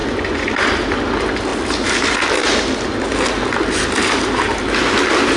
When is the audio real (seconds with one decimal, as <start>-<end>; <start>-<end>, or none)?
0.5-5.4